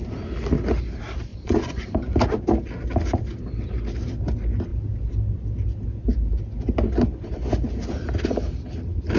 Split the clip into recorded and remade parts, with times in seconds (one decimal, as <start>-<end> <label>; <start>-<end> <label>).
0.0-1.3 recorded; 1.3-2.1 remade; 2.1-9.2 recorded